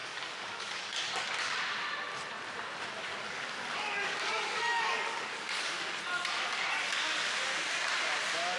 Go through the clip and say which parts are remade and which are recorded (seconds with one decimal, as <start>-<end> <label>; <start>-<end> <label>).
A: 0.0-1.6 remade; 1.6-3.1 recorded; 3.1-6.0 remade; 6.0-8.6 recorded